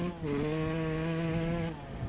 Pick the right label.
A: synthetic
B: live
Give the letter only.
B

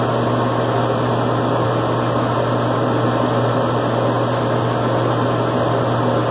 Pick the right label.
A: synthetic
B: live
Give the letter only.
B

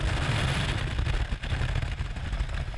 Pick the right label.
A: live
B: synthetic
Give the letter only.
A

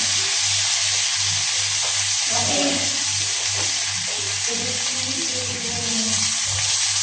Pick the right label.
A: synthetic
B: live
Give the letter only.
B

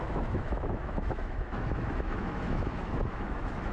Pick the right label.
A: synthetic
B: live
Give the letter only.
A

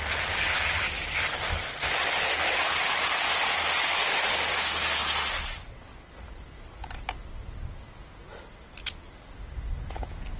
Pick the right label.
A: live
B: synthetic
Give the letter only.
A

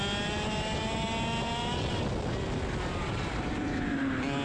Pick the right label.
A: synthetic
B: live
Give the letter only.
B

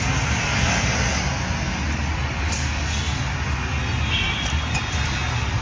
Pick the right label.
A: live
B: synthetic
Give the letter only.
A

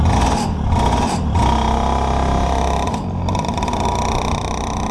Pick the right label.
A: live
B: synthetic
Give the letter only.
A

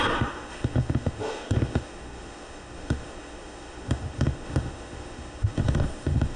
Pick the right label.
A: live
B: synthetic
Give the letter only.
B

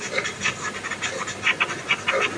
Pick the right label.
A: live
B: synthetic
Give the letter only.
A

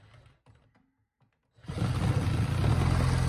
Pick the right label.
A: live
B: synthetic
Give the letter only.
A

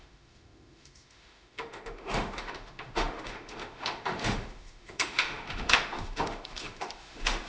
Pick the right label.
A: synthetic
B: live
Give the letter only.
A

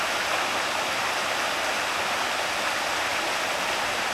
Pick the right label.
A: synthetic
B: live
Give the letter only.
B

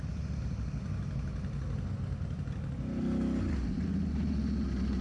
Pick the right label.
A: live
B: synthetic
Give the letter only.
A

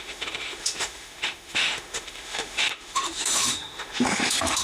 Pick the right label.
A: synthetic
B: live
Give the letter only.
A